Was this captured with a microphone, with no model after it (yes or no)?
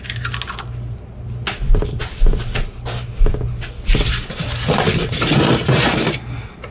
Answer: yes